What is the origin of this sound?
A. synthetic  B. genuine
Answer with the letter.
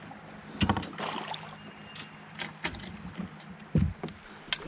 B